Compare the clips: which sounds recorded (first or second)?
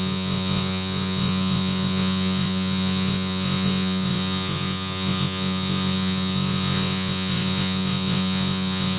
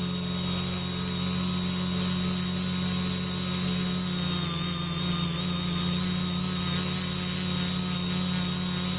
second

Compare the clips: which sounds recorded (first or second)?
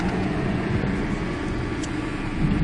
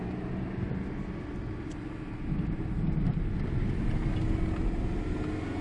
second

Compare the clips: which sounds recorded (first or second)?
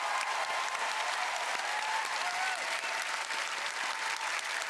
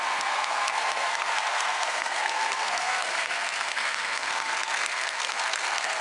first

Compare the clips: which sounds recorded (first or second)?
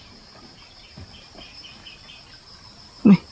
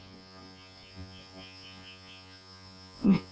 first